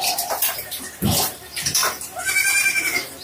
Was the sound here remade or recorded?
remade